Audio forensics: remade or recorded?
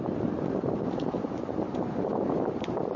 remade